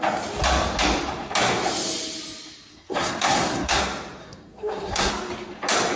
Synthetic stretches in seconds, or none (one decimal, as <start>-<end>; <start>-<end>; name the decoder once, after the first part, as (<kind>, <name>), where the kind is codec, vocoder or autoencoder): 2.7-3.8 (codec, SNAC); 4.2-5.1